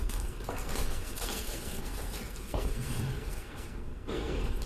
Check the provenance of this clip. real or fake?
fake